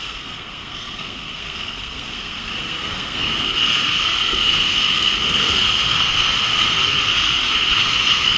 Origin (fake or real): fake